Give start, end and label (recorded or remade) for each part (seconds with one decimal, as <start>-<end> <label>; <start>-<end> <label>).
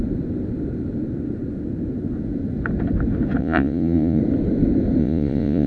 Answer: 0.0-3.4 recorded; 3.4-4.2 remade; 4.2-5.0 recorded; 5.0-5.7 remade